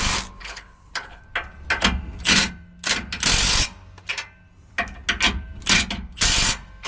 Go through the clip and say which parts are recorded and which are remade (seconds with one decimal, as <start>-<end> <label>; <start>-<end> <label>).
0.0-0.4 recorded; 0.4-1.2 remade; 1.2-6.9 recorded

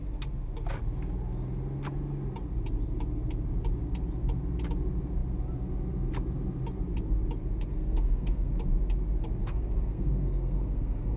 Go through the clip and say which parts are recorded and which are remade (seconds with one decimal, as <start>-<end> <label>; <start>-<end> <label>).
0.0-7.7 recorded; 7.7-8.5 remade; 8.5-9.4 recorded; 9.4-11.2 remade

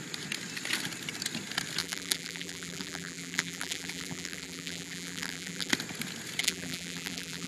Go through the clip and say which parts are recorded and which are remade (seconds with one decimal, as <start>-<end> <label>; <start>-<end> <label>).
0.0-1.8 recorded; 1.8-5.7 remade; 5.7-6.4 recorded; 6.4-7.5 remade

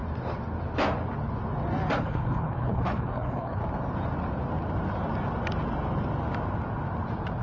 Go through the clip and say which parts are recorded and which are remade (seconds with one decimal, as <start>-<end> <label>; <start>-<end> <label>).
0.0-2.0 recorded; 2.0-3.6 remade; 3.6-7.4 recorded

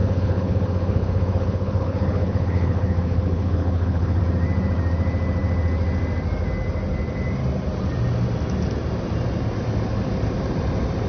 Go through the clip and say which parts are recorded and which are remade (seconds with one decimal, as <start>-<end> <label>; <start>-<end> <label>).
0.0-4.2 remade; 4.2-11.1 recorded

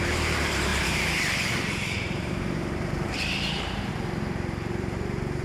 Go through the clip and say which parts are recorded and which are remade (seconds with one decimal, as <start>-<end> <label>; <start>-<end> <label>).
0.0-5.4 remade